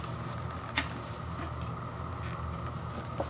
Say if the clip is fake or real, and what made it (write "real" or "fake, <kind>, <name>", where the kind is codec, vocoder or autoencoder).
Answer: real